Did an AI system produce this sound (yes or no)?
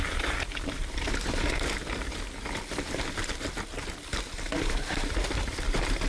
no